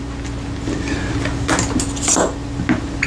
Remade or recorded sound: recorded